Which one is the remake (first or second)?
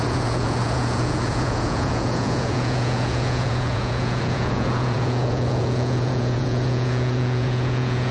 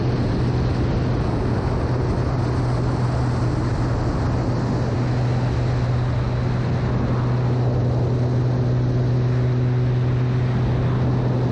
first